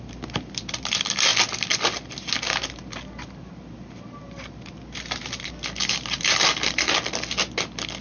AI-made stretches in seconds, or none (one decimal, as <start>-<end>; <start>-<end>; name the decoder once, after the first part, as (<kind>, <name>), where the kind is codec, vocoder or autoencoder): none